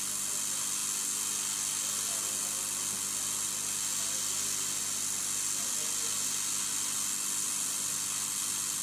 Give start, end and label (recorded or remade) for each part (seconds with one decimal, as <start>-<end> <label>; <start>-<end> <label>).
0.0-8.8 recorded

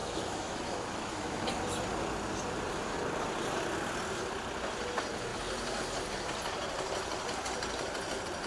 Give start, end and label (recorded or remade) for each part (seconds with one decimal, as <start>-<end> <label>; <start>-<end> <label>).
0.0-1.5 remade; 1.5-8.5 recorded

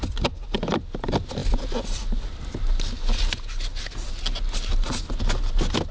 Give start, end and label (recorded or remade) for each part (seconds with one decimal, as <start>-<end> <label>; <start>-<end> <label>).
0.0-5.9 recorded

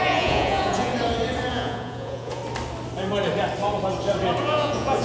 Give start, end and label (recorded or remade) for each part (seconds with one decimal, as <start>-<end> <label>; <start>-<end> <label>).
0.0-0.9 remade; 0.9-1.5 recorded; 1.5-2.4 remade; 2.4-4.4 recorded; 4.4-5.0 remade

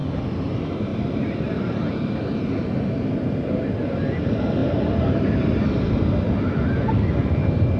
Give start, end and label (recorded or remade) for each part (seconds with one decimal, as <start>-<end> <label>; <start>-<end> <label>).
0.0-4.6 recorded; 4.6-5.6 remade; 5.6-7.8 recorded

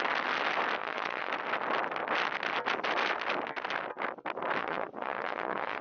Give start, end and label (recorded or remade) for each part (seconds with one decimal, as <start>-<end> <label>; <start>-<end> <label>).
0.0-0.8 recorded; 0.8-1.3 remade; 1.3-4.6 recorded; 4.6-5.8 remade

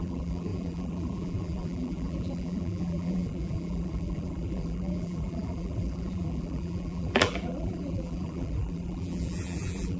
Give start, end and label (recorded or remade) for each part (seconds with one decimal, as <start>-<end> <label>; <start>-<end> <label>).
0.0-10.0 remade